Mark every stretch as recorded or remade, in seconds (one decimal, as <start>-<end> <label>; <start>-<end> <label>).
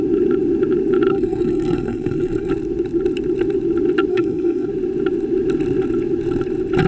0.0-1.1 recorded; 1.1-2.5 remade; 2.5-4.1 recorded; 4.1-4.7 remade; 4.7-6.9 recorded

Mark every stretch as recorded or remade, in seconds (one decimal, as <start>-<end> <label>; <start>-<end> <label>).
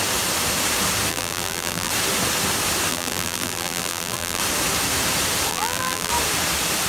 0.0-1.1 recorded; 1.1-1.9 remade; 1.9-2.9 recorded; 2.9-4.4 remade; 4.4-5.5 recorded; 5.5-6.1 remade; 6.1-6.9 recorded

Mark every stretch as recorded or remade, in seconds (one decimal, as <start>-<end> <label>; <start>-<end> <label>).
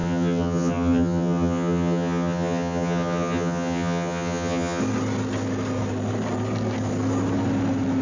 0.0-4.8 remade; 4.8-8.0 recorded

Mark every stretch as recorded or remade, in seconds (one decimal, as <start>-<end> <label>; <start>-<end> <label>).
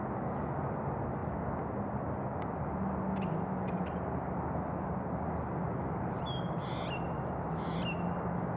0.0-8.6 recorded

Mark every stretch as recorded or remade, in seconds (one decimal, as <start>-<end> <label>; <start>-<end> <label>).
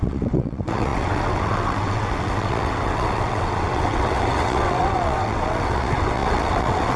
0.0-7.0 remade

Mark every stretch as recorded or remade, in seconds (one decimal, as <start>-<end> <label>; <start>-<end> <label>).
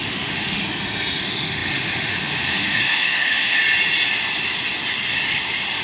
0.0-0.6 remade; 0.6-1.2 recorded; 1.2-3.6 remade; 3.6-5.8 recorded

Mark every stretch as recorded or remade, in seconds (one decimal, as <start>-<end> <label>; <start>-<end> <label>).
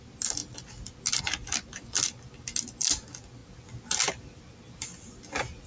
0.0-5.7 recorded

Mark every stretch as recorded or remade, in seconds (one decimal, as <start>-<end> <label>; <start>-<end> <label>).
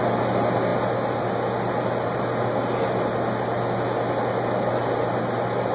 0.0-5.7 recorded